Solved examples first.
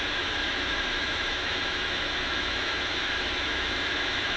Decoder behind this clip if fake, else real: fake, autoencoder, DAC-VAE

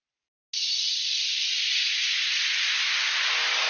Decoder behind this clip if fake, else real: real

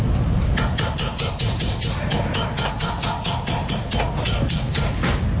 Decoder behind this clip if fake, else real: real